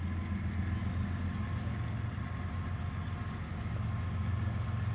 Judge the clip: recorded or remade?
recorded